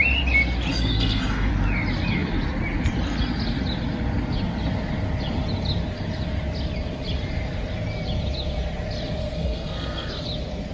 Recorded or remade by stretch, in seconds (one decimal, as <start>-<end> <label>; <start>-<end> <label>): 0.0-0.7 recorded; 0.7-1.5 remade; 1.5-9.2 recorded; 9.2-10.1 remade; 10.1-10.7 recorded